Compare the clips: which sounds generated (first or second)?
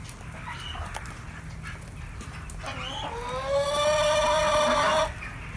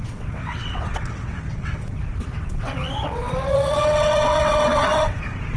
second